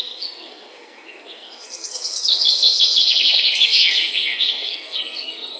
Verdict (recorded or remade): remade